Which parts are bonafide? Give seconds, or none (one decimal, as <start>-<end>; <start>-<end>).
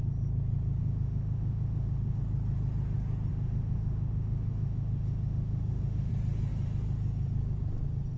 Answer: 0.0-0.8; 2.2-3.3; 6.1-8.2